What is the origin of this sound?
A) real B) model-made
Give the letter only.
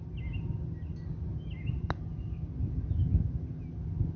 A